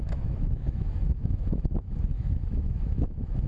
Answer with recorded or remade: remade